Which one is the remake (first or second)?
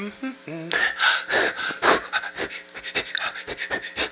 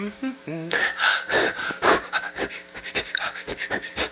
second